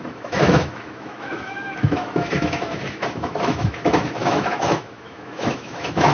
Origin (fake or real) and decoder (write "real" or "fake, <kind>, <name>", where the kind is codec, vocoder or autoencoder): fake, autoencoder, DAC-VAE